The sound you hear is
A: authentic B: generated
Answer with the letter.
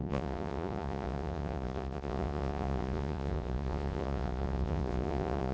B